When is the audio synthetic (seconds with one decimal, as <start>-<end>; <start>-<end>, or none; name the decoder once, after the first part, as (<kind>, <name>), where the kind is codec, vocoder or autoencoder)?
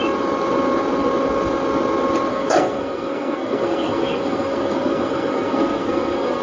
2.3-6.4 (codec, SNAC)